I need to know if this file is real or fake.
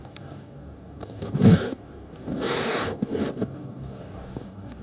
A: fake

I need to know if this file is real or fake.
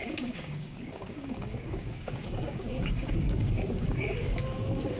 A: fake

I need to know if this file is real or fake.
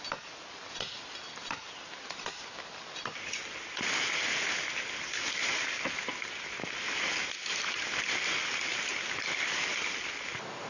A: real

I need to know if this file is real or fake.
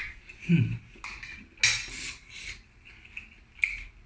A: real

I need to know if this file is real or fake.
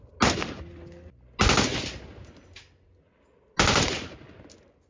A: real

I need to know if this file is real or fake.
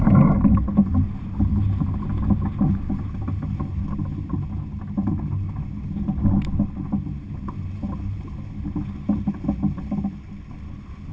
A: real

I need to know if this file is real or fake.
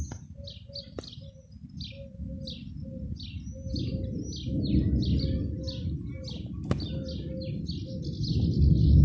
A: real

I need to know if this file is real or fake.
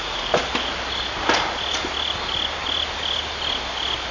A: real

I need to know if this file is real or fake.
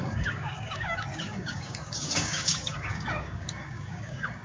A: fake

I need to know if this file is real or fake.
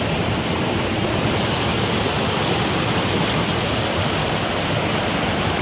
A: real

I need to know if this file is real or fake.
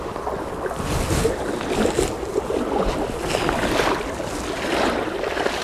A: real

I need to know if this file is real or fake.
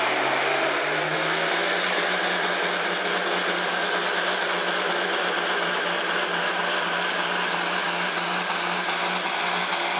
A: real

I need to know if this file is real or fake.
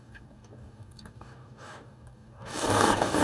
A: fake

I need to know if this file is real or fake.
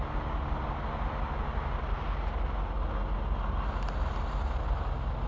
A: real